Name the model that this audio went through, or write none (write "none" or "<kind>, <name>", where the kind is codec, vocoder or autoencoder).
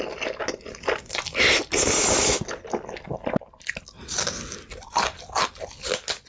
none